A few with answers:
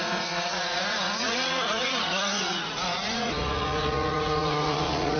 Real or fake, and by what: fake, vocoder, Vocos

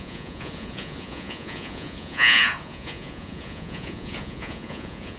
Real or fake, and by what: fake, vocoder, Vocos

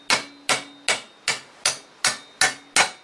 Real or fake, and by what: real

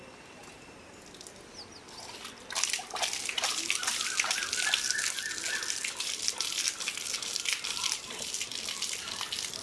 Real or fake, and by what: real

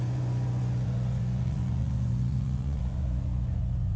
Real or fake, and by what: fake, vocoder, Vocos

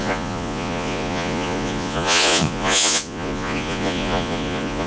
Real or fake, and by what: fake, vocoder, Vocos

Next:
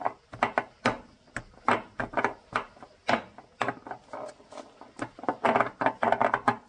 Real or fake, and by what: real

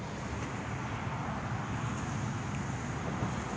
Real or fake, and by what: real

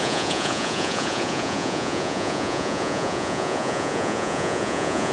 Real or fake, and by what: fake, vocoder, Vocos